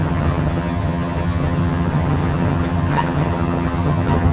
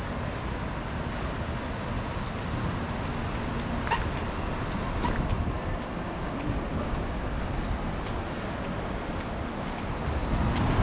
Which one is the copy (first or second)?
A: first